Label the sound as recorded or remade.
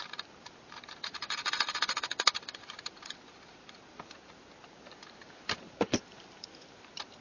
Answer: remade